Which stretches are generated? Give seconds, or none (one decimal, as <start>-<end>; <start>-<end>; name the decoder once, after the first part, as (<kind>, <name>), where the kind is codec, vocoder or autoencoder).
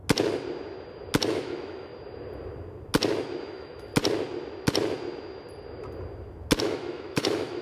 1.3-1.9 (autoencoder, DAC-VAE); 3.4-3.9; 6.6-7.6